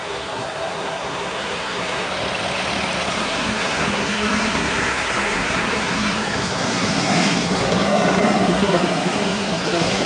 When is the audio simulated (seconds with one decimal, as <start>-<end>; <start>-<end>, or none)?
0.0-2.1; 3.1-10.1